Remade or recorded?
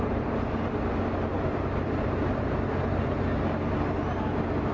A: recorded